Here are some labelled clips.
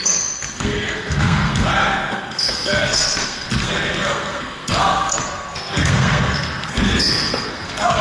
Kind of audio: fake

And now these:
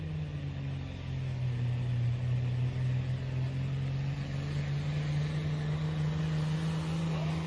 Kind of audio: real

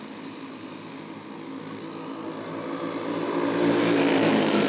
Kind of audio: real